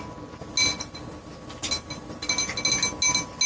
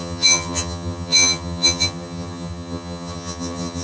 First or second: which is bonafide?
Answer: first